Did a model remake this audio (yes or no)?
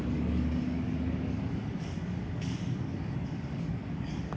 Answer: yes